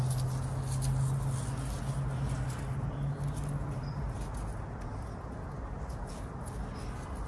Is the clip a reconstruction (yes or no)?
no